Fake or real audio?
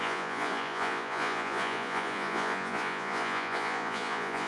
fake